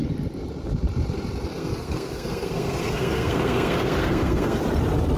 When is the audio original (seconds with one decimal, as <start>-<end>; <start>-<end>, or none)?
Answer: 0.0-1.5; 4.6-5.2